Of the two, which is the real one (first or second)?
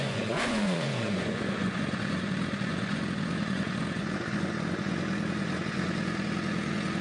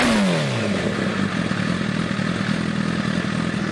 second